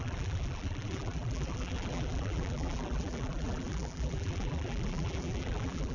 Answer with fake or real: fake